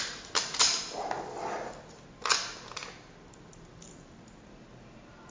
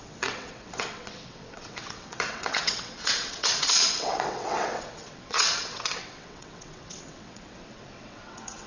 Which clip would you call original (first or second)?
first